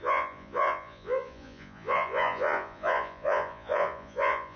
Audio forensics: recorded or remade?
remade